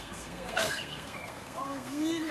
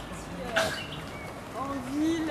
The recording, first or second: second